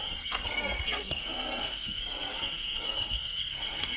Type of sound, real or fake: fake